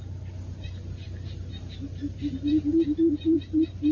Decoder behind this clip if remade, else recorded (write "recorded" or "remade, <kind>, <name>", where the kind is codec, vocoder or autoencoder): recorded